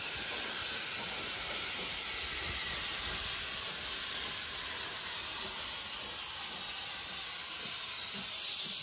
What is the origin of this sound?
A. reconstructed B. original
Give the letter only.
B